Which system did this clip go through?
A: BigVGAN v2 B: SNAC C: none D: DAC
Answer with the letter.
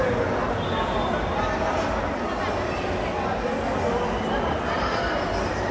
C